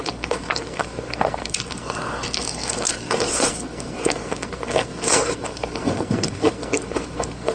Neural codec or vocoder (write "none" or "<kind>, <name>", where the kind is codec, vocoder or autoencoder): codec, SNAC